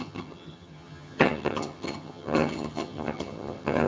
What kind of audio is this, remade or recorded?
remade